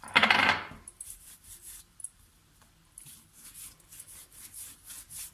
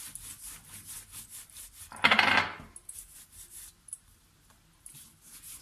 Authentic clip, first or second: second